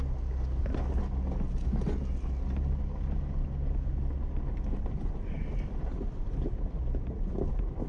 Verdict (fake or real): real